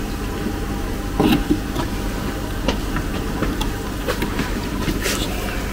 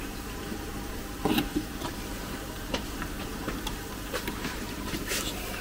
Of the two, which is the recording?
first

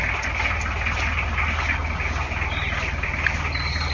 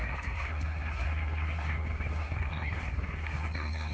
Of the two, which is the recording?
first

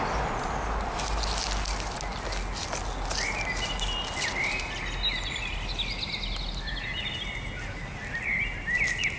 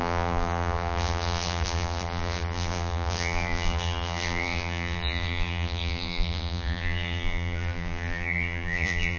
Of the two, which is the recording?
first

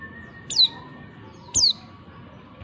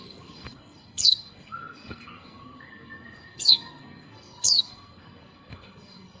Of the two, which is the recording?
first